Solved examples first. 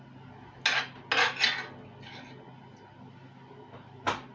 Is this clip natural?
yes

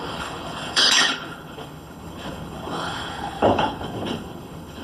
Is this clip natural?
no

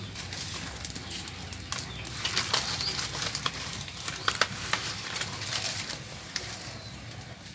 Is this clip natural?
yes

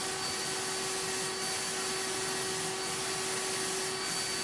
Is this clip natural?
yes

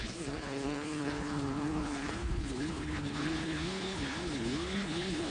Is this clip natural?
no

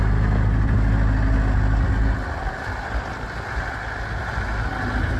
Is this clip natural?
yes